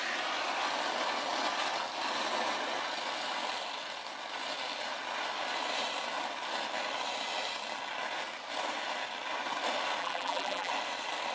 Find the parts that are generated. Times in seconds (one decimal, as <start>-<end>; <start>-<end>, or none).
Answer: 10.0-10.7